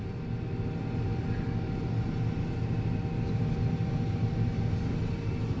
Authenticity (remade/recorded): recorded